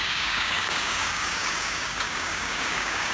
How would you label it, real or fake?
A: fake